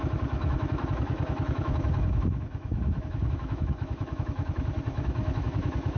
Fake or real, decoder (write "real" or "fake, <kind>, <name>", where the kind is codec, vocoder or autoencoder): fake, autoencoder, DAC-VAE